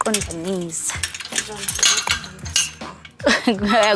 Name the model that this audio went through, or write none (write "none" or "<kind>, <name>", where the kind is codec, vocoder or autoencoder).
none